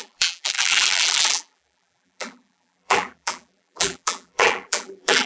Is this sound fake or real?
fake